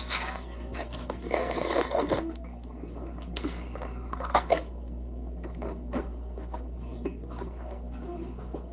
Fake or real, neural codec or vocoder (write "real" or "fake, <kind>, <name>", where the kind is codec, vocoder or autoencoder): fake, codec, SNAC